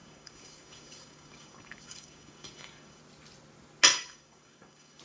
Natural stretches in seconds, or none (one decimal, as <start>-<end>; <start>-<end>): 3.0-3.9